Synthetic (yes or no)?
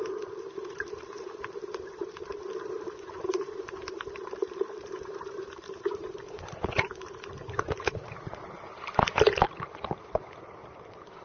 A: yes